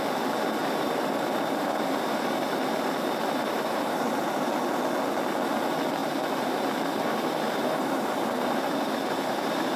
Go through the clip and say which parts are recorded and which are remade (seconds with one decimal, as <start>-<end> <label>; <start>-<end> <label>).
0.0-0.6 recorded; 0.6-4.5 remade; 4.5-6.0 recorded; 6.0-9.8 remade